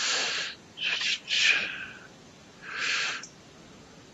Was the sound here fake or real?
fake